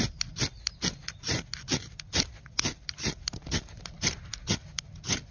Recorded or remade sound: recorded